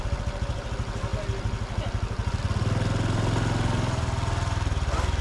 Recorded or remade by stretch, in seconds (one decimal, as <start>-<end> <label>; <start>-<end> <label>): 0.0-5.2 recorded